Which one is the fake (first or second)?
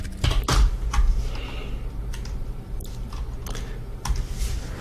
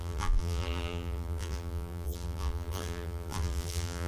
second